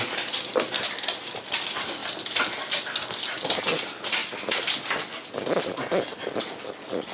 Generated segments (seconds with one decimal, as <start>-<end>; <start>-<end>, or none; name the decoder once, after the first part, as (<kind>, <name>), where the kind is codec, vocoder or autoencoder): none